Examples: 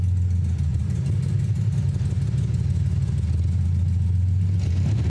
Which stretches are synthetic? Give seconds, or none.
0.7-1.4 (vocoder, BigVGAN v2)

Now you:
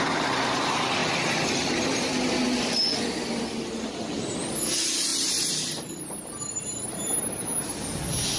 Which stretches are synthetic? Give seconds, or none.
none